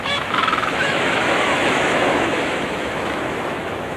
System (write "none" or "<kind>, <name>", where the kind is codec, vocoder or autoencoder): autoencoder, DAC-VAE